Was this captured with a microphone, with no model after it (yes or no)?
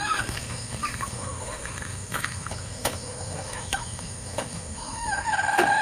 no